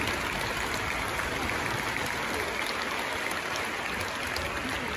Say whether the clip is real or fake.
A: real